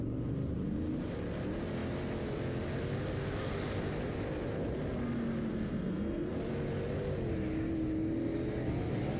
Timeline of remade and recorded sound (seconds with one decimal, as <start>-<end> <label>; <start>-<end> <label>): 0.0-5.5 recorded; 5.5-6.3 remade; 6.3-9.2 recorded